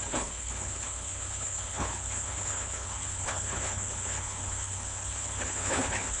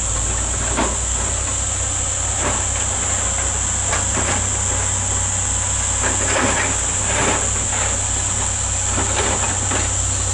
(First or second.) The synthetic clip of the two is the first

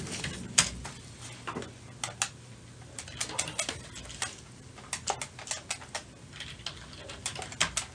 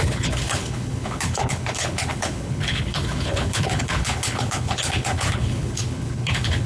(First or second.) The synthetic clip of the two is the second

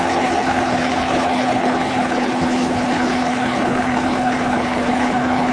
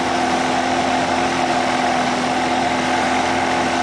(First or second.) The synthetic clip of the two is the first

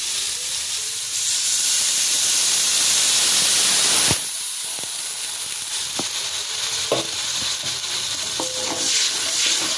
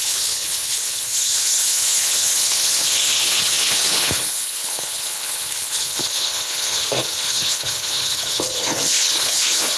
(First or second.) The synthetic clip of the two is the second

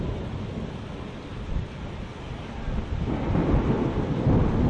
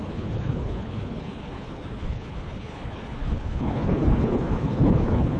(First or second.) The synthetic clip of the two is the second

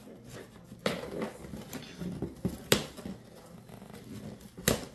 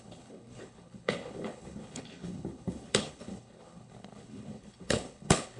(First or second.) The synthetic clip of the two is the second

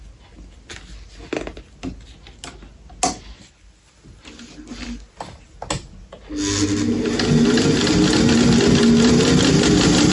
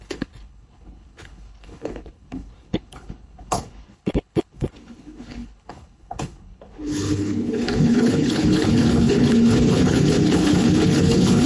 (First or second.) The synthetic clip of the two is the second